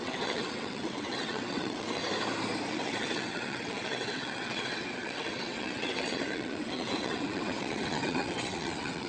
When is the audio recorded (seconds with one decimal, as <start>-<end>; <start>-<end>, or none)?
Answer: 2.0-2.7